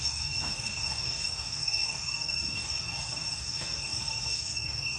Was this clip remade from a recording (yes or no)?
yes